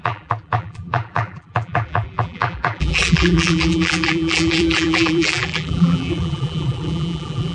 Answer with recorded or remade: remade